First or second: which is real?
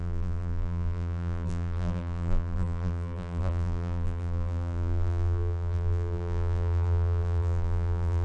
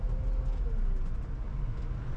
second